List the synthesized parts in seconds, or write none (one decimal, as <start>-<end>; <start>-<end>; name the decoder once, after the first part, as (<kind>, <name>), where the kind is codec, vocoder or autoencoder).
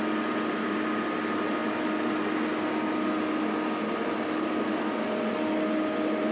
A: none